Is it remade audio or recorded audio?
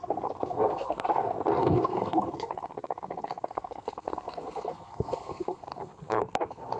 remade